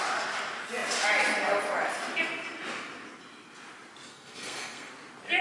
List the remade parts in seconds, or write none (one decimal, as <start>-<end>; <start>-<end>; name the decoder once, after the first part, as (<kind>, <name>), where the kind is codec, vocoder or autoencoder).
4.1-4.9 (codec, SNAC)